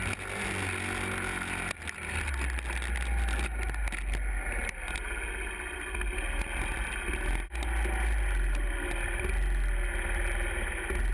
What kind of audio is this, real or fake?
real